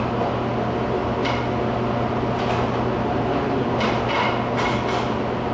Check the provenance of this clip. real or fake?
real